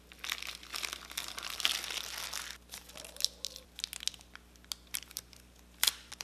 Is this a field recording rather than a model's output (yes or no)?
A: yes